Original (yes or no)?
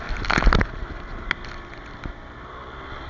yes